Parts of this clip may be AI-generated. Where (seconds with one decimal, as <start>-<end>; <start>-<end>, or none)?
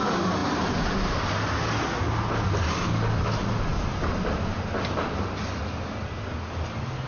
none